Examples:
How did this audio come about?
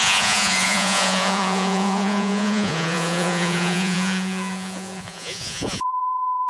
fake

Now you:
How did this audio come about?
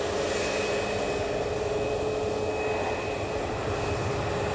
real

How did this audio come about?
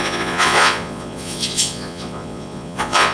fake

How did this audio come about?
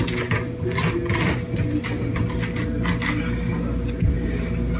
real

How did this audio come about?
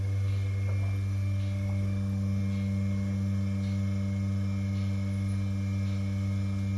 real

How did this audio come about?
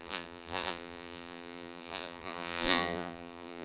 fake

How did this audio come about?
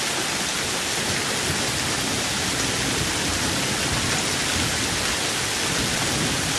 real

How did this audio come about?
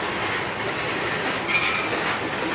real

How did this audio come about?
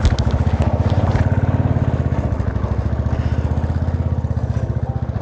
real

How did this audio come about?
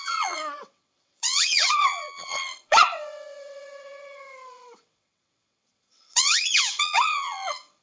fake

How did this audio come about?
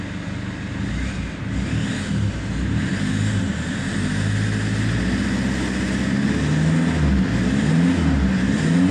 real